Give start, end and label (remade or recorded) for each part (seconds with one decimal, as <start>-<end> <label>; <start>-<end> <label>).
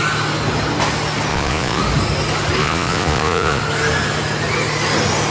0.0-1.3 recorded; 1.3-1.8 remade; 1.8-2.6 recorded; 2.6-3.6 remade; 3.6-5.3 recorded